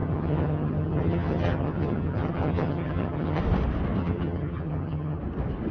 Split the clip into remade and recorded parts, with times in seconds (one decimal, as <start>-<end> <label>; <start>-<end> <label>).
0.0-3.4 remade; 3.4-4.0 recorded; 4.0-5.2 remade; 5.2-5.7 recorded